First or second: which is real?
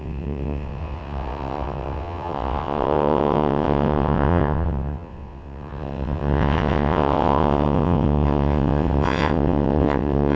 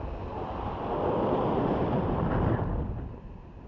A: second